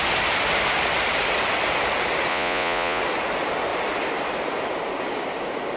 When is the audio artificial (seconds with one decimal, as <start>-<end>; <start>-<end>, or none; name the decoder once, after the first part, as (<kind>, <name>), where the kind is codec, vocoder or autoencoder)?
2.3-3.0 (vocoder, Vocos)